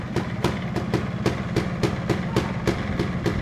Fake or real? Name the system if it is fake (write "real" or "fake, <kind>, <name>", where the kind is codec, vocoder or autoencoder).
real